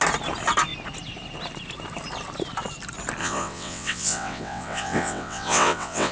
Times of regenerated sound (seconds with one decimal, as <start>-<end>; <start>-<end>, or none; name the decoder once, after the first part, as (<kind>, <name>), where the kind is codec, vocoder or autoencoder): 3.2-6.1 (vocoder, WaveNeXt)